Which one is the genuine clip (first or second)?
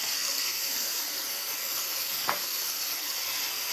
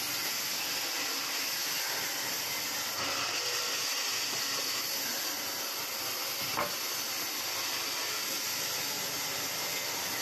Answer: second